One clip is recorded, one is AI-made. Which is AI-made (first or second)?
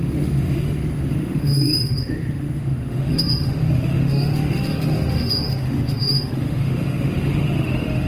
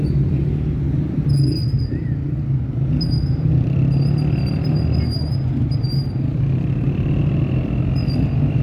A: first